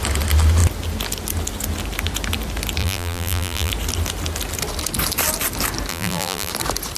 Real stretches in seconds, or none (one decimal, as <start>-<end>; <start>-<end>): 0.0-2.8; 3.7-5.9; 6.5-7.0